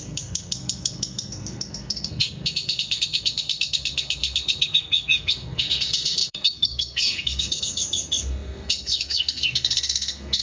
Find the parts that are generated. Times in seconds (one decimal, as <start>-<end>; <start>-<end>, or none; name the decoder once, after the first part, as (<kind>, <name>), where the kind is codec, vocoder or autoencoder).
0.0-10.4 (codec, SNAC)

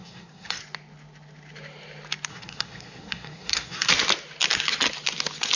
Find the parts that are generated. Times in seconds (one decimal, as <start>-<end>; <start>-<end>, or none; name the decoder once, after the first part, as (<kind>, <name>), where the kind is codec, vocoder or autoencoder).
0.0-0.6 (codec, SNAC); 2.3-3.9

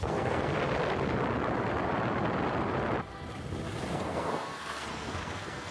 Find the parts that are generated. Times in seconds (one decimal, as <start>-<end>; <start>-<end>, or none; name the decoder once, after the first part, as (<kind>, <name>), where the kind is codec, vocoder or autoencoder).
0.0-0.5 (codec, SNAC); 3.9-5.7